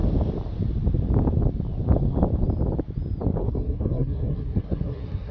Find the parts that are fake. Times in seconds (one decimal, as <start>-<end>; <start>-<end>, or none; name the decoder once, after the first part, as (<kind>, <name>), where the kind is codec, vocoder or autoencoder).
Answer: 3.4-5.3 (codec, SNAC)